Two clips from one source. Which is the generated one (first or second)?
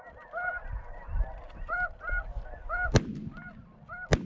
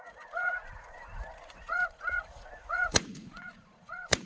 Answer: second